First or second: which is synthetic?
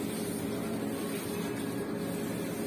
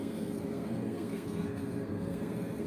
second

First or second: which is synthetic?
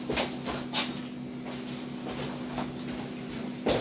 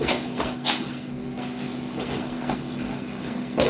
second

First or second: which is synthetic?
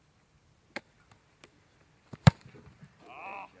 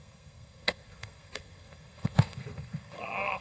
second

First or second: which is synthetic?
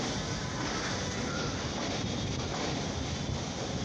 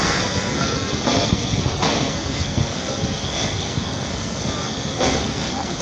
second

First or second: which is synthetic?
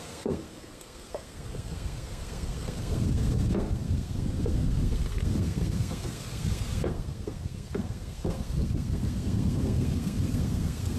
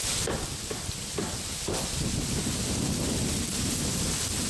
first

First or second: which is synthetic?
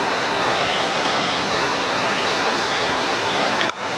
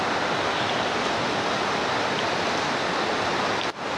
first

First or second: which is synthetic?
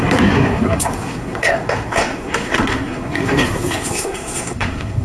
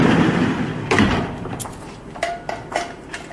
first